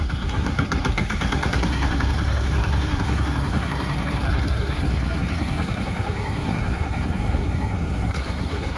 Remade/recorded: remade